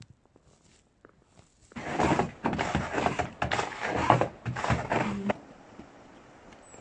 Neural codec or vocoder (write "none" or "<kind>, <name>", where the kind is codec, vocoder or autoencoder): none